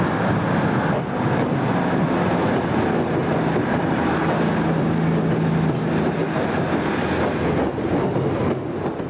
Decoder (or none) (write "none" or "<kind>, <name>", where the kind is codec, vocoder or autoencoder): none